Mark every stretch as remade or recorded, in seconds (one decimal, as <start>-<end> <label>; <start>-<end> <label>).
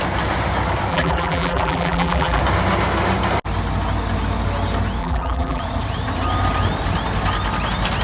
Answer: 0.0-0.9 recorded; 0.9-2.4 remade; 2.4-5.0 recorded; 5.0-5.6 remade; 5.6-8.0 recorded